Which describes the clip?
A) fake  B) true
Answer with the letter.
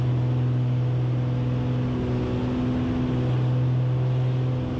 B